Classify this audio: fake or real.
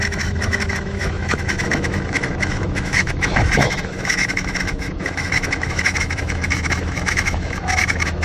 fake